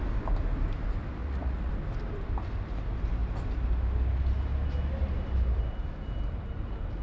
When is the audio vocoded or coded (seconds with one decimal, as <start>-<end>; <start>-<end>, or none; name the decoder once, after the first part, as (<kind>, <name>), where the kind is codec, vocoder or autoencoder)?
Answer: 1.2-1.7 (vocoder, Vocos)